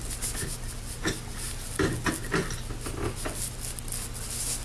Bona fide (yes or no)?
yes